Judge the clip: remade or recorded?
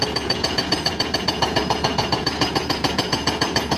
remade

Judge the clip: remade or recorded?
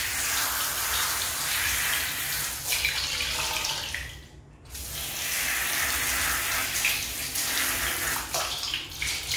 recorded